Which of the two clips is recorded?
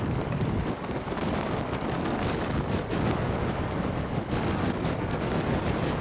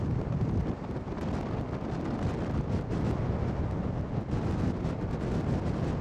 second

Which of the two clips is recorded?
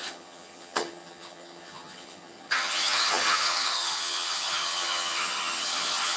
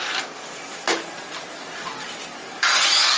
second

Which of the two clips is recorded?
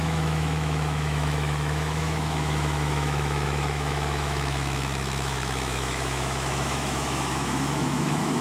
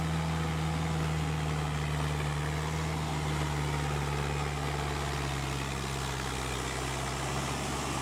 second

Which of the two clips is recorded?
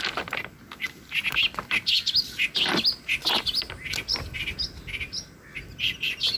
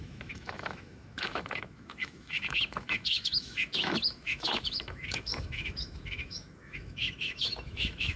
first